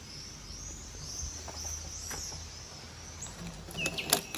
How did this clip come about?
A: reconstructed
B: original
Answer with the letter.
B